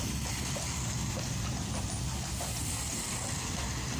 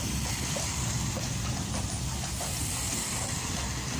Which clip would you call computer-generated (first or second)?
second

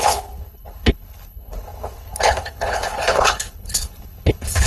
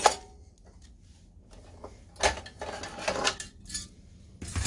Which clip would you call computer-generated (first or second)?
first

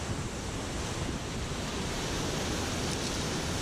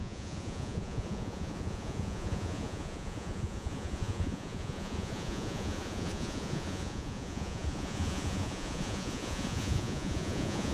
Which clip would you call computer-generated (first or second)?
second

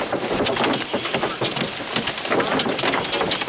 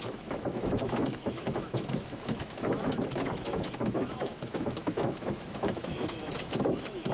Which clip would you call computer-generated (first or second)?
second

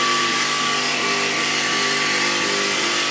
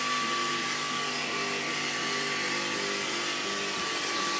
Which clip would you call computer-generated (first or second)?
first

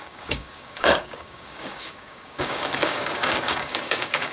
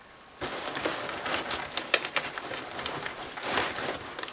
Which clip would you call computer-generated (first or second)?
first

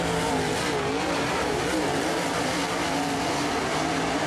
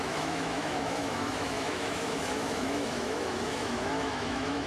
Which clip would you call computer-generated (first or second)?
second